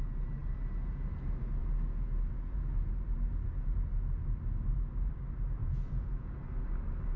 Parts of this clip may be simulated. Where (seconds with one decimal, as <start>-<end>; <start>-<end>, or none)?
5.6-6.3